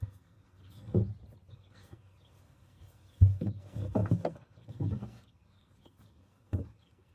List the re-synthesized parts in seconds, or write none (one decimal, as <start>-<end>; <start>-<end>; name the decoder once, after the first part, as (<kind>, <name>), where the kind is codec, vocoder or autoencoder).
0.0-1.0 (codec, SNAC); 1.5-7.1